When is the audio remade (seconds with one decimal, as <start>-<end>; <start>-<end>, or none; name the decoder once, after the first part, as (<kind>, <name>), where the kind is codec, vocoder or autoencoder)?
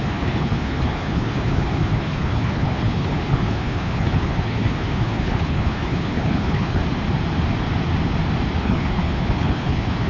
0.0-6.8 (codec, HILCodec); 8.6-10.1